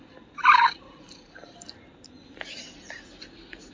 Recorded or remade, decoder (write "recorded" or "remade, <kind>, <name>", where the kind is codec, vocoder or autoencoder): recorded